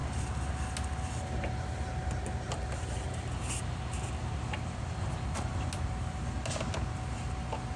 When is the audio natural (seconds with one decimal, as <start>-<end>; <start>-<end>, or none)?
0.0-7.8